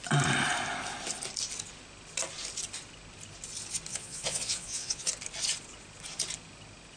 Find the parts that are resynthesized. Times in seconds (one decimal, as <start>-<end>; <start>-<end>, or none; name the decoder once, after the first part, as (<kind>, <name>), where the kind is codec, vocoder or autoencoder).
3.9-5.1 (vocoder, Vocos)